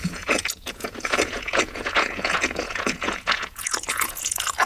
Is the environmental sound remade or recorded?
remade